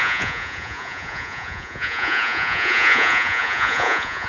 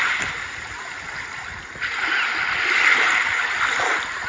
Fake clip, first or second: first